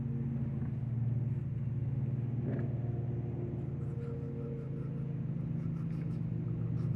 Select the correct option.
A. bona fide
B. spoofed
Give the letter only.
A